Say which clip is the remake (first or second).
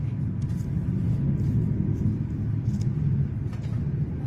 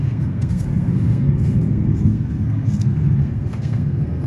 second